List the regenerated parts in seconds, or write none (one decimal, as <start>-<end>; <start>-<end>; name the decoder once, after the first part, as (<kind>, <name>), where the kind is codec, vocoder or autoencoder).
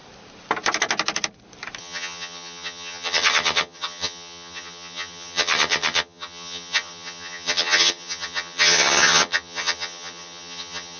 1.8-11.0 (vocoder, HiFi-GAN)